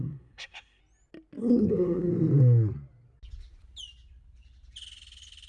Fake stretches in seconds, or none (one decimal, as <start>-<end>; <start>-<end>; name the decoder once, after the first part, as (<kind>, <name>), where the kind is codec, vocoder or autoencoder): 0.0-0.8 (codec, SNAC); 1.4-2.1